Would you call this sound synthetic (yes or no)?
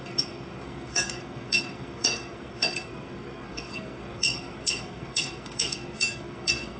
yes